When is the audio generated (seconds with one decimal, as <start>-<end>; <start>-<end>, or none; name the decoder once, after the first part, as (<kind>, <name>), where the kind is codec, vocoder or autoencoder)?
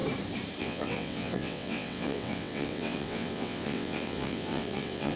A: 0.6-5.2 (vocoder, WaveNeXt)